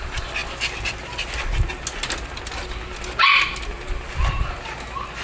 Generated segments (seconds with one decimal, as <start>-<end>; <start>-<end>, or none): none